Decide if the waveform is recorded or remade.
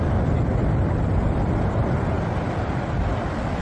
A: recorded